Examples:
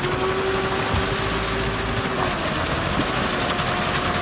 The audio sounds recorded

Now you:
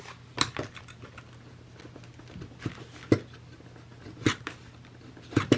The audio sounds recorded